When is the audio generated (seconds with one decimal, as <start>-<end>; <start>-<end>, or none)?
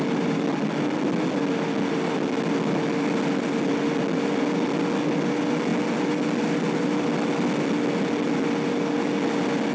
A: none